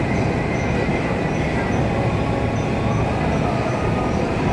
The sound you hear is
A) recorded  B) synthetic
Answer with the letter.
A